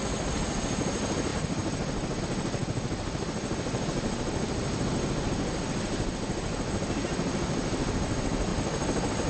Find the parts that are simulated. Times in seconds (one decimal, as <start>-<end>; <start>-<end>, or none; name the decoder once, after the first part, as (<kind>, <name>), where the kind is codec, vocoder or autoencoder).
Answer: 1.3-2.2 (vocoder, BigVGAN v2); 8.5-9.3